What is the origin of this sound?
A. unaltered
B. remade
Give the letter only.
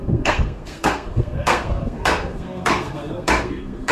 B